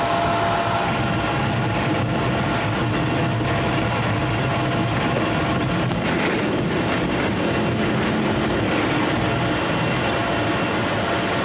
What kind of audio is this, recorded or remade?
recorded